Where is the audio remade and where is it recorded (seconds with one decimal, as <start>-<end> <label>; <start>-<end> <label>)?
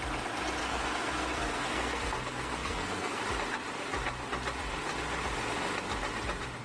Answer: 0.0-0.6 recorded; 0.6-3.2 remade; 3.2-6.6 recorded